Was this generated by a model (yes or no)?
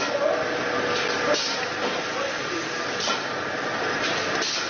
no